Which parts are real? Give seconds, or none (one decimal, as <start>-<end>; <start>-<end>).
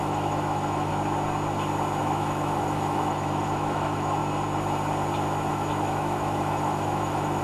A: 0.9-2.0; 4.2-5.5